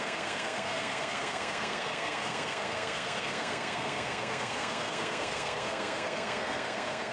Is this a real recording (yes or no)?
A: no